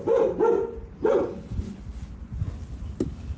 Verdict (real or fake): real